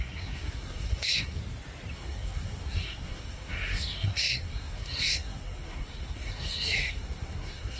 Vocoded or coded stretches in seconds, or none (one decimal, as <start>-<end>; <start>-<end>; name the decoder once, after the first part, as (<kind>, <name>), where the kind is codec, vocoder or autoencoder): 0.0-1.4 (codec, SNAC); 1.9-7.8